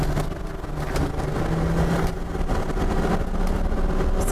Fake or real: real